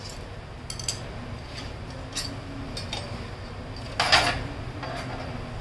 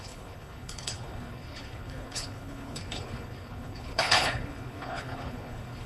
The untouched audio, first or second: first